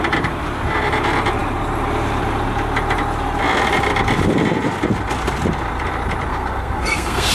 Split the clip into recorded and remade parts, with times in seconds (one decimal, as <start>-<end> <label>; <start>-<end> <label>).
0.0-6.3 recorded; 6.3-7.3 remade

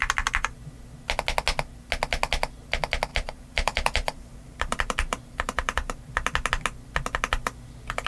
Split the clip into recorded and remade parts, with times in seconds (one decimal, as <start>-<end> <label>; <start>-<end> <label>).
0.0-3.1 recorded; 3.1-6.1 remade; 6.1-8.1 recorded

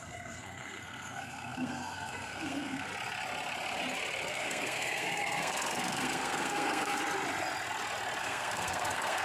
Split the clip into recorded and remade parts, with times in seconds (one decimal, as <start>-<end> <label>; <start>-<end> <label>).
0.0-2.9 remade; 2.9-4.3 recorded; 4.3-7.0 remade; 7.0-8.2 recorded; 8.2-9.2 remade

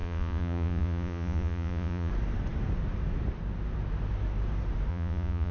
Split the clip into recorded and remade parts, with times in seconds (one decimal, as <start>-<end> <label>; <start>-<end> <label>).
0.0-2.1 remade; 2.1-4.9 recorded; 4.9-5.5 remade